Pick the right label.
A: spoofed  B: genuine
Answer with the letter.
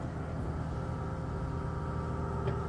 B